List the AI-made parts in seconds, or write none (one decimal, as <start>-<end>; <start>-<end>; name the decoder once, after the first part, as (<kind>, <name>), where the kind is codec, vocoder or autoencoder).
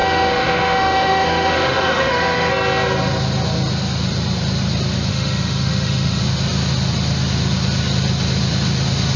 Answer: 0.0-2.5 (autoencoder, DAC-VAE); 5.1-6.2